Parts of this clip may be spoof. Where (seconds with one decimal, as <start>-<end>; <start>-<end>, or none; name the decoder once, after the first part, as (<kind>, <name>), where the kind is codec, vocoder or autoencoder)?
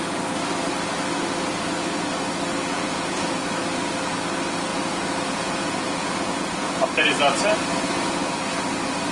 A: 2.7-3.4 (vocoder, Vocos); 4.7-6.8